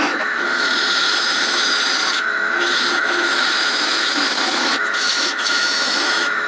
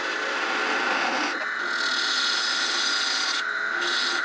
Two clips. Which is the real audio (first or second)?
second